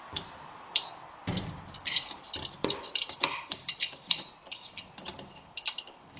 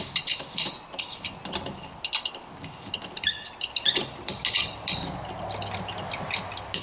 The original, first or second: second